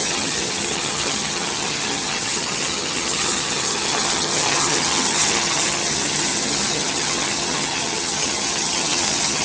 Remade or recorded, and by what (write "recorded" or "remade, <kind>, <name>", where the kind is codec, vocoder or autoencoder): remade, vocoder, HiFi-GAN